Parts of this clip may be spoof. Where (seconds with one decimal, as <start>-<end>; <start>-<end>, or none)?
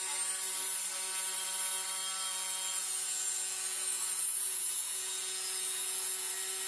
2.3-6.3